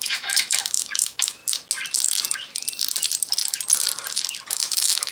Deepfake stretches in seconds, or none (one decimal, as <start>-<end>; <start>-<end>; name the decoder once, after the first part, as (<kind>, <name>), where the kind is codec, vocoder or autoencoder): 0.0-1.4 (autoencoder, DAC-VAE); 4.5-5.1

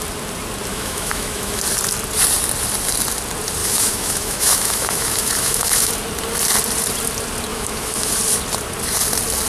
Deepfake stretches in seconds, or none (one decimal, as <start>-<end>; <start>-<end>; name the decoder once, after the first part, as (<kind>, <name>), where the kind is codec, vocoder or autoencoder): 0.7-1.6 (autoencoder, DAC-VAE); 3.6-5.9; 7.5-8.2

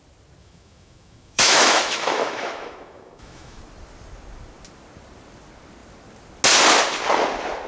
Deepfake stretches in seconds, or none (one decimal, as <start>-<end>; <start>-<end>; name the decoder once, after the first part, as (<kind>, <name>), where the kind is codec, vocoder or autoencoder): 0.4-3.6 (autoencoder, DAC-VAE)

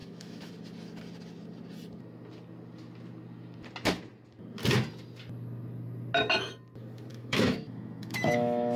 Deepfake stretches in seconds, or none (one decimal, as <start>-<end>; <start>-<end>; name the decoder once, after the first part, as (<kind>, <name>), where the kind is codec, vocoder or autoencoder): 0.0-0.5 (autoencoder, DAC-VAE); 7.1-8.8

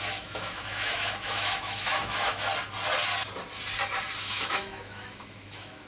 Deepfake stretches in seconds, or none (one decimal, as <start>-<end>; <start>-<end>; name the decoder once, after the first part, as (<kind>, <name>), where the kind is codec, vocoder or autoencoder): 0.0-2.5 (autoencoder, DAC-VAE); 4.2-5.9

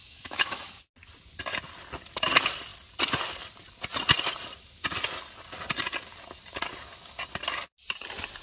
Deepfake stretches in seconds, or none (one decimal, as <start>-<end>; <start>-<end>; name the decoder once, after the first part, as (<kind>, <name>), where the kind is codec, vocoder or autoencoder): 0.0-0.7 (autoencoder, DAC-VAE)